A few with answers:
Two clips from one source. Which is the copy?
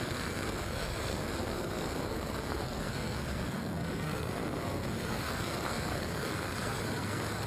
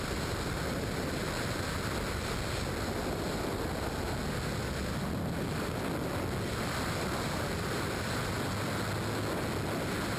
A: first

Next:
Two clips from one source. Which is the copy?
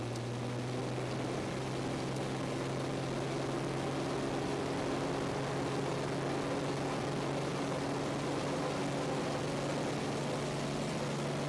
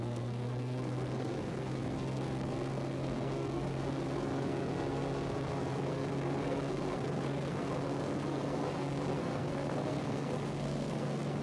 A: second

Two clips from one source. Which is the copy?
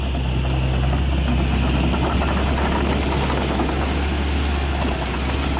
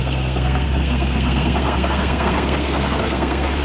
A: second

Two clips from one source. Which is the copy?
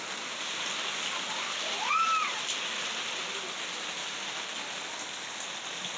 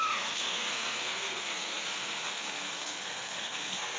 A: second